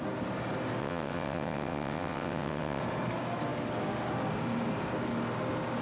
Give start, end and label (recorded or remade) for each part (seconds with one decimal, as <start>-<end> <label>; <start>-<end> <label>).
0.0-0.8 recorded; 0.8-2.8 remade; 2.8-5.8 recorded